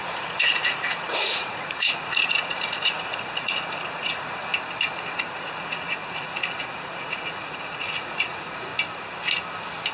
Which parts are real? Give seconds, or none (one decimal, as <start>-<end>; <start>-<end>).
4.5-5.3; 8.7-9.9